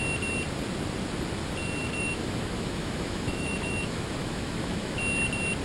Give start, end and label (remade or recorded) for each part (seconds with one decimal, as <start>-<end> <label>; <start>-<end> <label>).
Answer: 0.0-1.8 recorded; 1.8-5.0 remade; 5.0-5.6 recorded